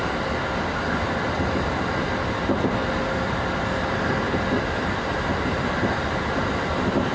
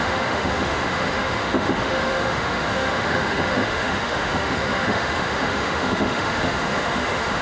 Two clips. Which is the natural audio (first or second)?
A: first